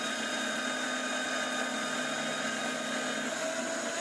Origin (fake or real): real